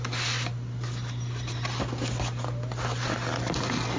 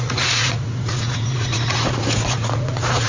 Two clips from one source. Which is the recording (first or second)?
first